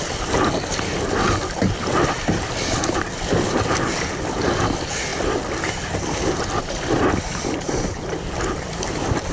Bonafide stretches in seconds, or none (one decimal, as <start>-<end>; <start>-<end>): 0.0-9.3